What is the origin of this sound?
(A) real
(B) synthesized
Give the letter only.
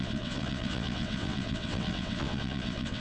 B